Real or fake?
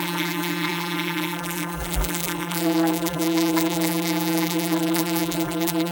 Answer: fake